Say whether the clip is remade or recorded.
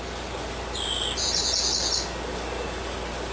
recorded